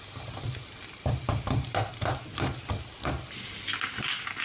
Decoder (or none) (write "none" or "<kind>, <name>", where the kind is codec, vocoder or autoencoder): none